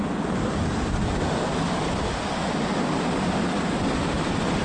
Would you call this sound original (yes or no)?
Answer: yes